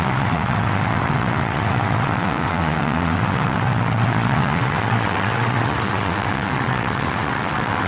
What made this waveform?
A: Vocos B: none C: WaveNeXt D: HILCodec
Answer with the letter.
C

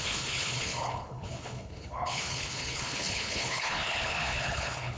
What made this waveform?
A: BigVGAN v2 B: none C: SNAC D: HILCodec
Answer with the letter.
D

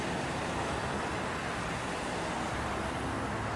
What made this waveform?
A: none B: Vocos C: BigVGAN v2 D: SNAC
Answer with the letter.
A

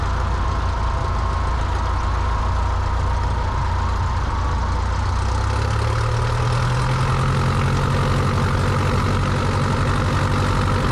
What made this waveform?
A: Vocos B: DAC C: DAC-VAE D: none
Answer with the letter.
D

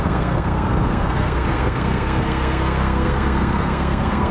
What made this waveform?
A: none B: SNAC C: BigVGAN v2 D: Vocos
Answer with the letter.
B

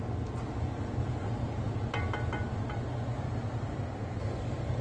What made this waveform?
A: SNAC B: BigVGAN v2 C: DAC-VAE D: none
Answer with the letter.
D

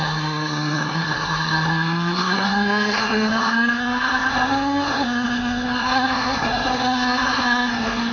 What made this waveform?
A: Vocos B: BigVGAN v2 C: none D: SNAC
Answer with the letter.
D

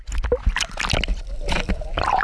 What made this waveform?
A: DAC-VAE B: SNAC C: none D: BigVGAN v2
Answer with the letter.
C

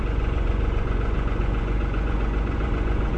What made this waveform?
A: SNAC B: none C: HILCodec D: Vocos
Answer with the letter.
D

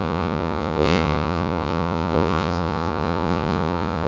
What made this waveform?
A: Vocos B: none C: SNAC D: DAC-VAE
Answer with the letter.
A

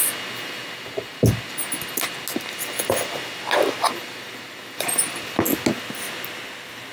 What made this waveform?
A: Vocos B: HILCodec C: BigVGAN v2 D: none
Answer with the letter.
D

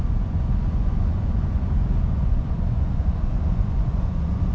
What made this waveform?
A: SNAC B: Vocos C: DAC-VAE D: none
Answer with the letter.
B